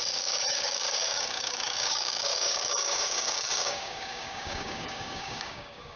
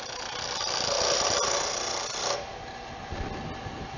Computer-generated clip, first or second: first